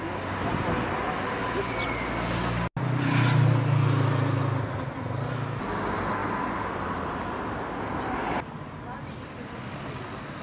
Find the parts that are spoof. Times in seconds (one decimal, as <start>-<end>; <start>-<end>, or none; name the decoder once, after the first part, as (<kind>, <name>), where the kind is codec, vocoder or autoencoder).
none